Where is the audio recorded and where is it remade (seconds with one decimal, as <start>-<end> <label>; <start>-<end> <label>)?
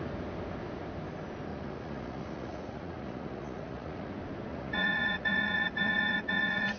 0.0-1.5 recorded; 1.5-4.1 remade; 4.1-4.5 recorded; 4.5-6.8 remade